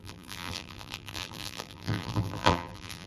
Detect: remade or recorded remade